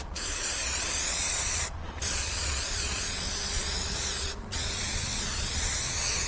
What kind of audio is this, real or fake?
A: fake